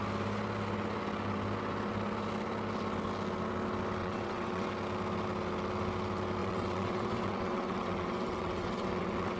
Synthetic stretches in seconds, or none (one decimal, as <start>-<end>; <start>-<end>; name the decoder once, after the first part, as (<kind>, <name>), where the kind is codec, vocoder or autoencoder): 4.0-4.7 (vocoder, WaveNeXt); 6.4-9.4